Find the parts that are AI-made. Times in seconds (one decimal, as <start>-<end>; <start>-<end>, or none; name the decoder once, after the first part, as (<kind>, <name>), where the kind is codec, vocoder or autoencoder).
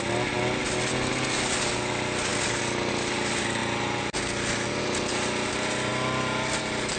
none